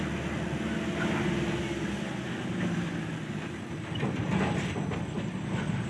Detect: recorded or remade recorded